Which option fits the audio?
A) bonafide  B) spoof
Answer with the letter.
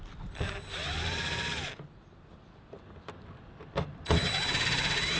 A